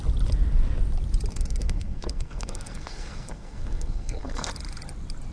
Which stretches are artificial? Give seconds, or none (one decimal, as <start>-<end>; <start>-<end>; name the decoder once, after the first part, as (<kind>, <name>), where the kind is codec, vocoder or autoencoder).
1.3-4.5 (codec, SNAC)